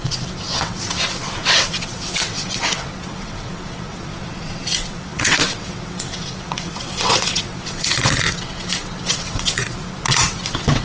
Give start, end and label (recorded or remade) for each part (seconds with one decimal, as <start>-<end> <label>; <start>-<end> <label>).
0.0-10.8 remade

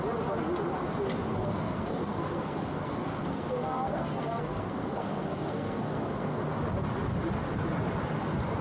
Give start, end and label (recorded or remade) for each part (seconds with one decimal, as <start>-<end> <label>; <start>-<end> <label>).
0.0-1.3 recorded; 1.3-6.4 remade; 6.4-8.6 recorded

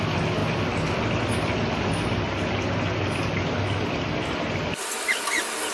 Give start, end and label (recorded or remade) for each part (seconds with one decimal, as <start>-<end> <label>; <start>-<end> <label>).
0.0-5.7 recorded

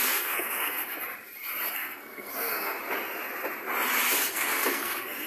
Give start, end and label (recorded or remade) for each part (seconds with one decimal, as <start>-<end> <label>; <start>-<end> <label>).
0.0-0.8 remade; 0.8-1.7 recorded; 1.7-2.8 remade; 2.8-4.3 recorded; 4.3-5.3 remade

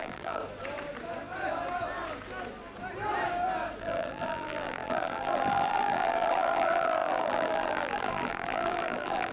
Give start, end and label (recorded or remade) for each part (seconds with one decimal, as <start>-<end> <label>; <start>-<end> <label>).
0.0-0.4 remade; 0.4-3.8 recorded; 3.8-9.3 remade

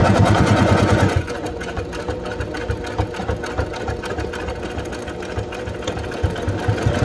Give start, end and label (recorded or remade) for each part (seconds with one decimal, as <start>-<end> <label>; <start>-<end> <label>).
0.0-1.8 remade; 1.8-7.0 recorded